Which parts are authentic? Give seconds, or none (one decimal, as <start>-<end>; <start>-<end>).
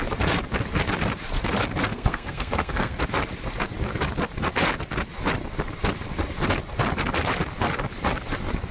0.0-1.8; 3.0-8.7